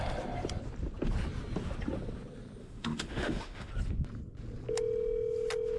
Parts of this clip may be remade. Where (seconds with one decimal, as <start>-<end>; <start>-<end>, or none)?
2.6-3.7